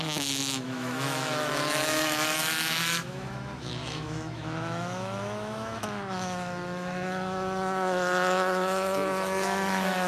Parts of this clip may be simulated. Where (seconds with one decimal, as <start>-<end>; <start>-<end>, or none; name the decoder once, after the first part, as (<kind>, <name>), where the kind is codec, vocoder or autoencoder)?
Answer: 0.0-10.1 (autoencoder, DAC-VAE)